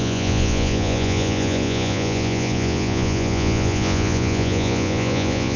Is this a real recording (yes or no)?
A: no